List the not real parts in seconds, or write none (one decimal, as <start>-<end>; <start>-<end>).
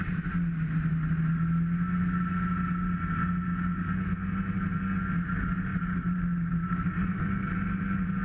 5.7-7.2